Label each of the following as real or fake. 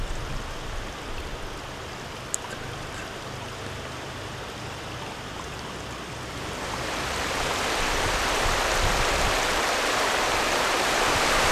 fake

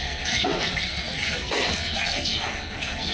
fake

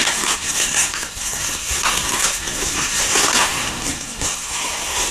fake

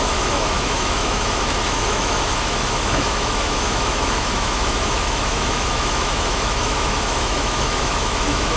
fake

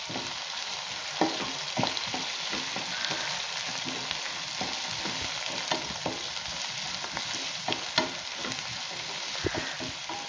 real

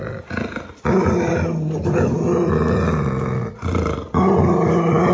real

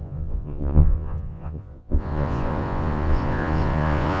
fake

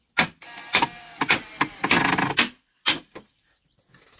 real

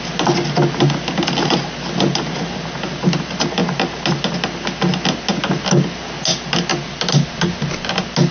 real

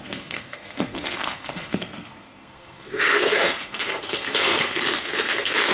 fake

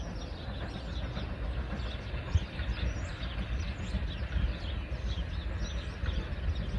real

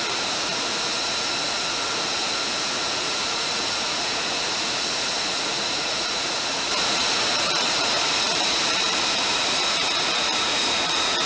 fake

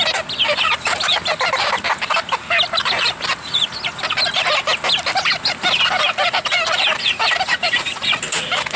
real